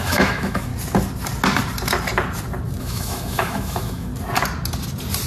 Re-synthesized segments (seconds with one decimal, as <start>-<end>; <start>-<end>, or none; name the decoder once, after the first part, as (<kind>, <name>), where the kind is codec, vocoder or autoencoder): 0.0-0.7 (autoencoder, DAC-VAE); 2.8-4.1

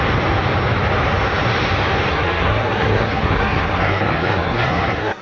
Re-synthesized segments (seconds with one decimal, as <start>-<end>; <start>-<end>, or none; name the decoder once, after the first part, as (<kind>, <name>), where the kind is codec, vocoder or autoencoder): 2.1-5.2 (codec, SNAC)

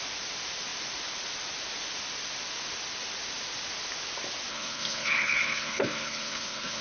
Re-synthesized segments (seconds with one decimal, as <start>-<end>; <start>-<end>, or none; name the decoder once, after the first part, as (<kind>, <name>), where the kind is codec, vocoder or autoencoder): 4.5-6.8 (codec, HILCodec)

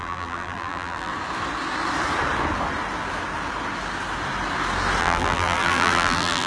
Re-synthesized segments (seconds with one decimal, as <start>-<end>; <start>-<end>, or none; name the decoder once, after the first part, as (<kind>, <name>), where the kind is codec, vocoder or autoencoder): 0.0-1.1 (vocoder, BigVGAN v2); 5.0-6.5

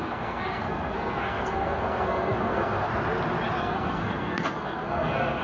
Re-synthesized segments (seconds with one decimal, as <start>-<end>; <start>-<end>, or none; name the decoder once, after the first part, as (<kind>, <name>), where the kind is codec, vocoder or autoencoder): 0.0-2.9 (codec, SNAC); 3.6-5.4